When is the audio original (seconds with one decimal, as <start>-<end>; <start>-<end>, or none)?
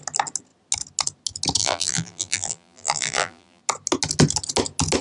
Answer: 0.0-1.6; 3.6-5.0